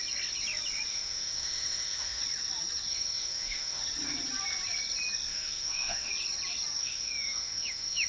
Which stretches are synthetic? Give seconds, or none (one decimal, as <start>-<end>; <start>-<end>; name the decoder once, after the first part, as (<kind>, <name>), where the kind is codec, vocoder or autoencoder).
0.9-2.2 (autoencoder, DAC-VAE); 2.9-3.8; 5.3-6.1; 6.8-8.1